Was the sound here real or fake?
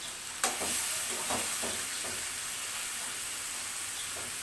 real